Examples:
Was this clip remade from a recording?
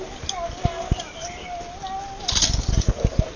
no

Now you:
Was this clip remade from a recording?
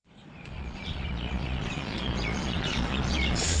yes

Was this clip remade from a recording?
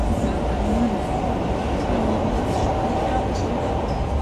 no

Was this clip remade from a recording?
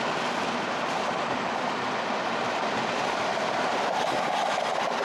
no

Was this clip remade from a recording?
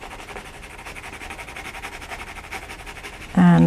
no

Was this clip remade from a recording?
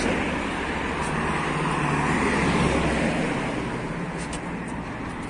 no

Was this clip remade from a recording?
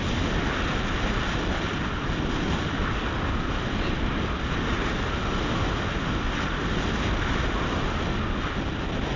no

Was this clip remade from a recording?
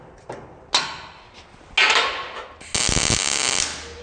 no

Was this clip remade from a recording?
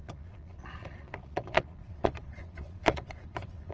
yes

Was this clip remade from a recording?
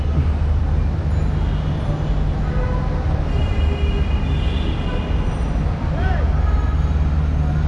no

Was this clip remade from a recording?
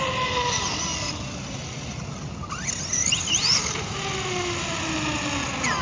no